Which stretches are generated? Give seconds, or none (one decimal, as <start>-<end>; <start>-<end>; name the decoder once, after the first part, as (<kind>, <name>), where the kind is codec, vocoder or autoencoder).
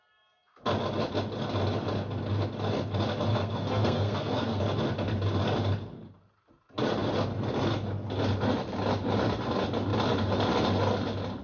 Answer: 3.3-4.6 (codec, SNAC)